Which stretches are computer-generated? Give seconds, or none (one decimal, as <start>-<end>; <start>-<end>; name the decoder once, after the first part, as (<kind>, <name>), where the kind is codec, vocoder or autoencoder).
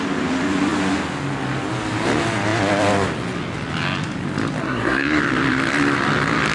4.6-5.2 (codec, SNAC)